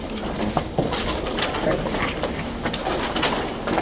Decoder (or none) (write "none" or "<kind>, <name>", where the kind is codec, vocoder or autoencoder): none